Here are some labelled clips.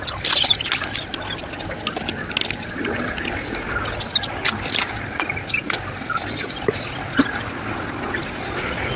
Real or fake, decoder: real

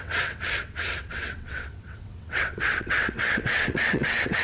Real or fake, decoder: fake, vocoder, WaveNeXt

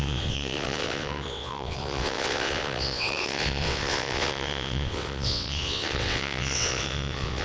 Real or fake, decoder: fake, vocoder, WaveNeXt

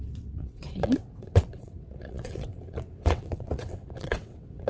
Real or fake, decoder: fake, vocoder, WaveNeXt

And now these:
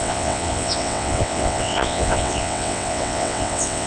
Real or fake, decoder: fake, vocoder, WaveNeXt